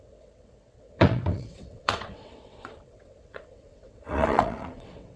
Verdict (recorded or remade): remade